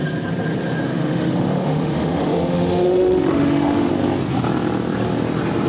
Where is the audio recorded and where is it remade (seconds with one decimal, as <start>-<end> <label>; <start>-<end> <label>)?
0.0-0.9 recorded; 0.9-3.9 remade; 3.9-5.7 recorded